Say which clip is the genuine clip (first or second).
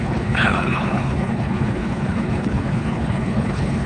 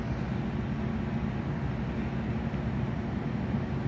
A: second